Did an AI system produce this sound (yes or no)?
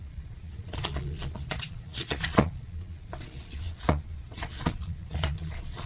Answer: yes